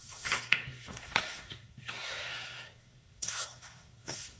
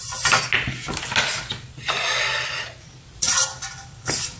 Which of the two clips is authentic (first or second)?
second